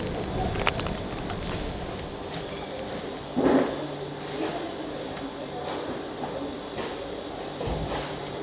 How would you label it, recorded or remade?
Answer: recorded